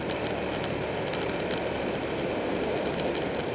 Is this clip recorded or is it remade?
recorded